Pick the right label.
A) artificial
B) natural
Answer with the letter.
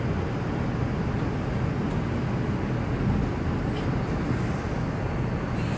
B